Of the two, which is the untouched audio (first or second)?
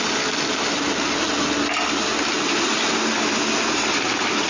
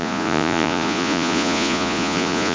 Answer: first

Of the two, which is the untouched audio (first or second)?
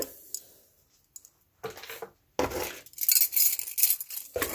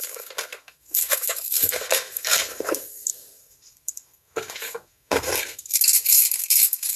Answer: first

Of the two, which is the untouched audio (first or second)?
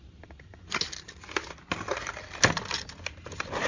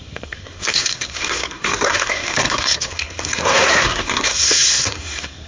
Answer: first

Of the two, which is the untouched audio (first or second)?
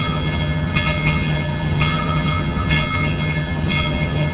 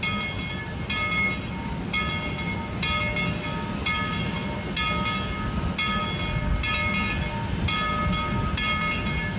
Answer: second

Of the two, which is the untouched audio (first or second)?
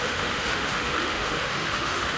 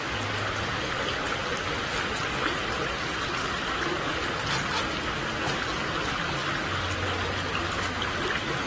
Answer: second